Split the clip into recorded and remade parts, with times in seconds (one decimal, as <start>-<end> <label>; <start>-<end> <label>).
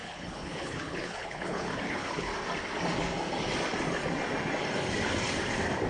0.0-2.3 remade; 2.3-5.9 recorded